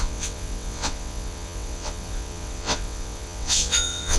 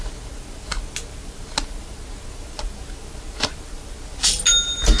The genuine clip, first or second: second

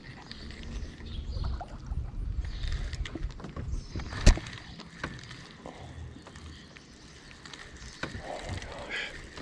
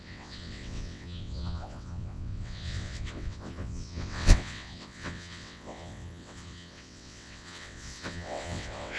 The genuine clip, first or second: first